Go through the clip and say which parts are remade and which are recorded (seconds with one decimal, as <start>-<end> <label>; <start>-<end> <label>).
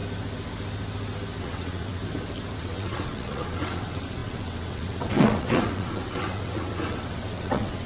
0.0-1.4 recorded; 1.4-2.0 remade; 2.0-2.6 recorded; 2.6-7.9 remade